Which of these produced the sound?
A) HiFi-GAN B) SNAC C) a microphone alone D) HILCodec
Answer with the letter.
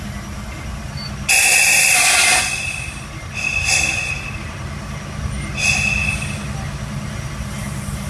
C